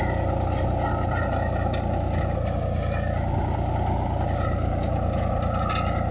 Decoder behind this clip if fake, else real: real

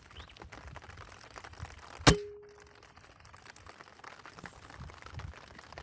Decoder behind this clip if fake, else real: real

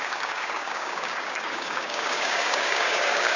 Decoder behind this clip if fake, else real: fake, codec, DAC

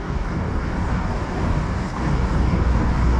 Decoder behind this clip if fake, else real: fake, codec, DAC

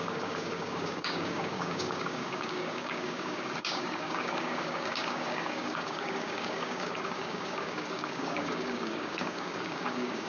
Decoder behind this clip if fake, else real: fake, codec, DAC